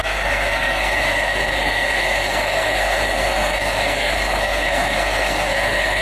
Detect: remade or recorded remade